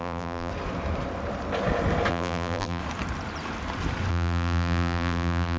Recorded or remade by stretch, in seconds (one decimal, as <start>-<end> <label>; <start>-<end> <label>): 0.0-0.5 remade; 0.5-2.1 recorded; 2.1-2.8 remade; 2.8-4.1 recorded; 4.1-5.6 remade